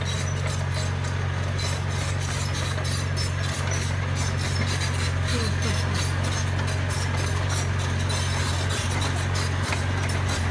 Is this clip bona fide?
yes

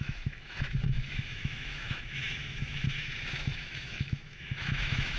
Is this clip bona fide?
no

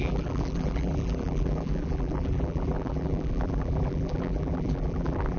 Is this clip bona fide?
no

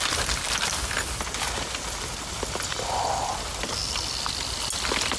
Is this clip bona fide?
yes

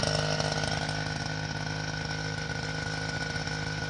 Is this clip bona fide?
yes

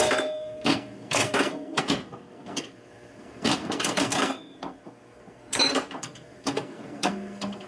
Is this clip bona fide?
no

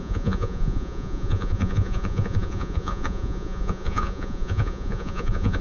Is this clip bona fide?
no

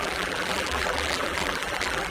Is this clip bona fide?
no